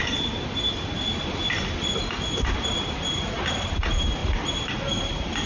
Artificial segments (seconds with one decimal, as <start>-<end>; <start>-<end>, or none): 2.6-4.2